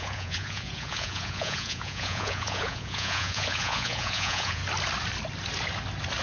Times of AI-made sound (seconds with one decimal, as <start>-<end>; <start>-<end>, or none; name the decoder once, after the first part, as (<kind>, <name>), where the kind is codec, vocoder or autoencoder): 0.0-4.6 (vocoder, Vocos)